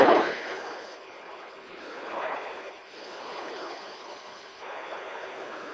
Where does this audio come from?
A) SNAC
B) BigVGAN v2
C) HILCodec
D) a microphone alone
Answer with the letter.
C